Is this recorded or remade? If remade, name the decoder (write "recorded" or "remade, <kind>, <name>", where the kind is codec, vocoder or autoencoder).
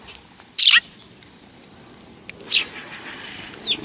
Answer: recorded